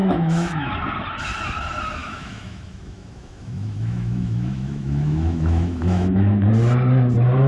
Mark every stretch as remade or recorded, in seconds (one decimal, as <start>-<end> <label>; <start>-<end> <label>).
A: 0.0-0.7 remade; 0.7-2.0 recorded; 2.0-6.5 remade; 6.5-7.5 recorded